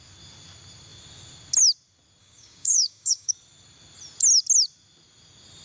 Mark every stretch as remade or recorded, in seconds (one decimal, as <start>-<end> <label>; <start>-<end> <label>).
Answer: 0.0-2.2 recorded; 2.2-3.3 remade; 3.3-5.6 recorded